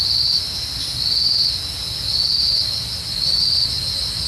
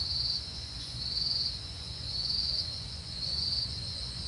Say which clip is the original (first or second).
first